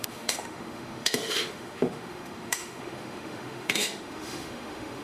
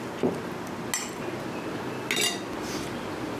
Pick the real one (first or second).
second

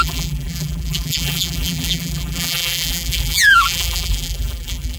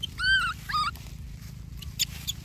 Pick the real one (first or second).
second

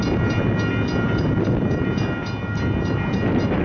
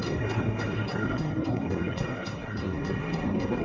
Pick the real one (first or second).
first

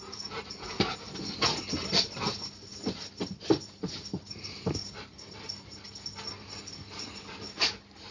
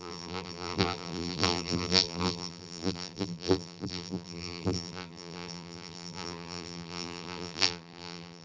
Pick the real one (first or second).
first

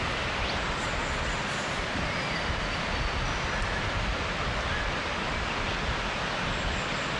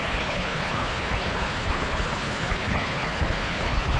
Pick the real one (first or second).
first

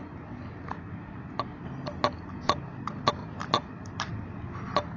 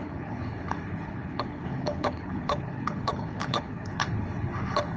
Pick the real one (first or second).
first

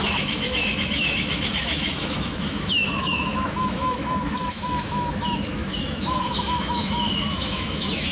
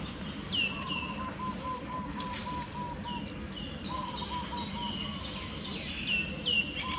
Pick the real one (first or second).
second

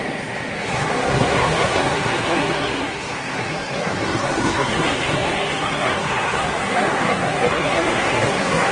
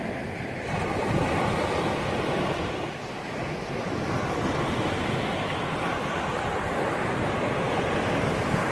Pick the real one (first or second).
second